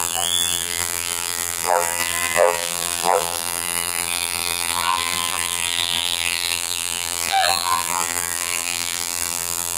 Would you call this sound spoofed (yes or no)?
yes